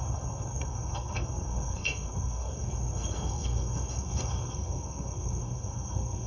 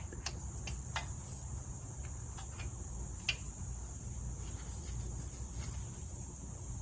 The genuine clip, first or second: second